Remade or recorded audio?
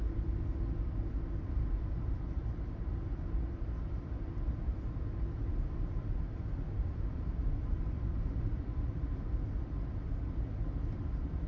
remade